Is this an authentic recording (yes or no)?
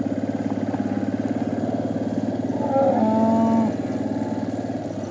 yes